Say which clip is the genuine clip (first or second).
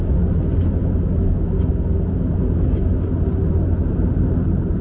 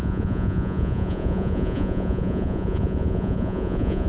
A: first